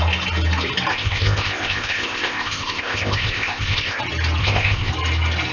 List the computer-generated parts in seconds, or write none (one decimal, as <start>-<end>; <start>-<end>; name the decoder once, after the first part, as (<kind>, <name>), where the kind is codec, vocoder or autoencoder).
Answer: 0.9-4.0 (codec, ZipCodec); 4.4-4.9